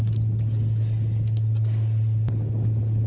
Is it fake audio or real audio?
real